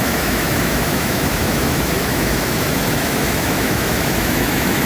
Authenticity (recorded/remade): remade